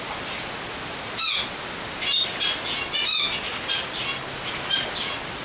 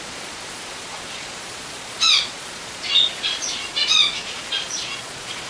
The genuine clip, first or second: first